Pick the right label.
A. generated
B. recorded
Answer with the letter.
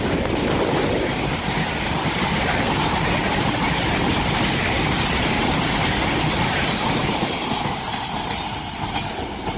B